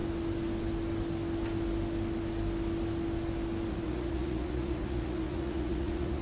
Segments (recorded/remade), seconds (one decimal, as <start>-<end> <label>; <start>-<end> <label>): 0.0-3.7 recorded; 3.7-6.2 remade